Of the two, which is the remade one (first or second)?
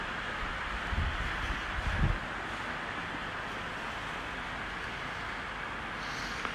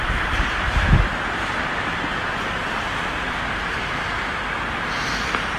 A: second